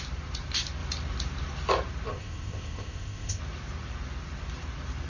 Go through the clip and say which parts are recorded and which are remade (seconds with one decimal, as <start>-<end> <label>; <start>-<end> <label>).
0.0-2.1 recorded; 2.1-3.4 remade; 3.4-5.1 recorded